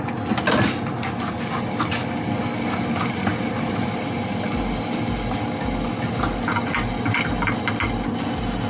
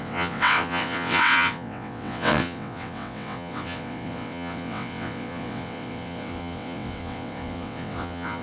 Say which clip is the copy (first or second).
second